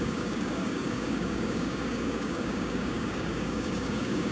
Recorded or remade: remade